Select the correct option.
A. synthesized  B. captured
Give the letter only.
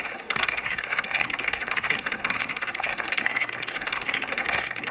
A